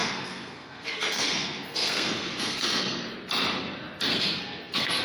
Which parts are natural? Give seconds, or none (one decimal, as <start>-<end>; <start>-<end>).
3.0-4.1